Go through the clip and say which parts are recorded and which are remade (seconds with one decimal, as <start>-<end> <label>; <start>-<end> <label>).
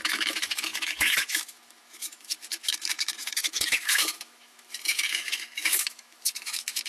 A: 0.0-6.9 remade